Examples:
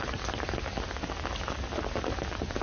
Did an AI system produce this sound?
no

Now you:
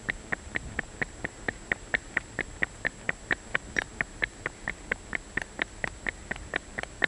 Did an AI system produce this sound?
no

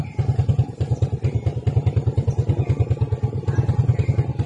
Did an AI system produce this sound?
no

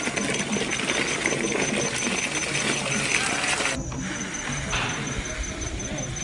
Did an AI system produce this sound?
no